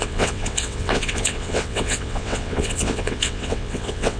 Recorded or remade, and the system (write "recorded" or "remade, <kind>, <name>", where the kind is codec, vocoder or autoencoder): remade, vocoder, WaveNeXt